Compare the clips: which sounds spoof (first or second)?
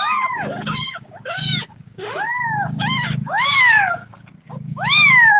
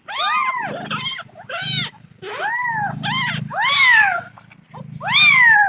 first